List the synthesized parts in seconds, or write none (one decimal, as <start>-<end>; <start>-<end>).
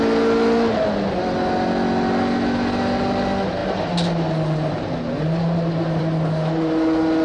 none